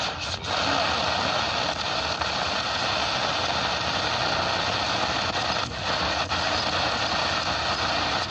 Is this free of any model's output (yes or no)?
yes